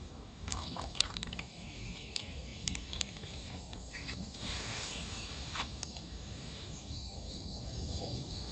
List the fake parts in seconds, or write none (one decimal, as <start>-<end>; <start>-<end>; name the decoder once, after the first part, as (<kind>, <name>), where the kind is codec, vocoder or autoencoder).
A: 0.0-8.5 (codec, DAC)